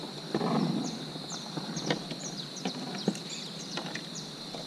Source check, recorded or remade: recorded